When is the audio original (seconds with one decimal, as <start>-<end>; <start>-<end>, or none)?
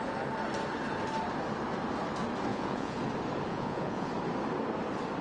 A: 0.0-2.5; 3.0-3.5; 4.1-5.2